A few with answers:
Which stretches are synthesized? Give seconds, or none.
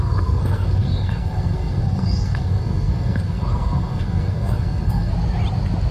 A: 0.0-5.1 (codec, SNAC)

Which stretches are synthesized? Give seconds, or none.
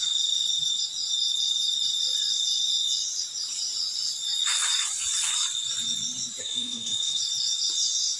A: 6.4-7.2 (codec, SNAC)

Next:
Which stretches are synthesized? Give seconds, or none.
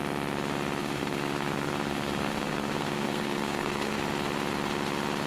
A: 0.8-4.0 (codec, SNAC)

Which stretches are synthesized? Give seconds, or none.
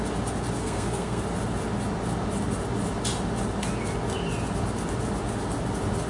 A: 0.6-1.2 (codec, SNAC)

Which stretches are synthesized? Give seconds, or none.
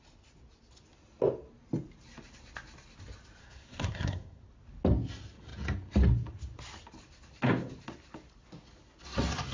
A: 3.4-4.4 (codec, SNAC)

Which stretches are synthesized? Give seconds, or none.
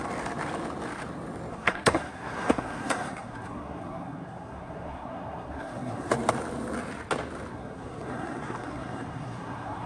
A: 1.5-6.1 (codec, SNAC); 7.5-9.9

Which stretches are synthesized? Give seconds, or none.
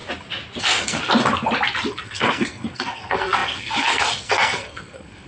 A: 0.6-1.0 (codec, SNAC); 1.9-5.3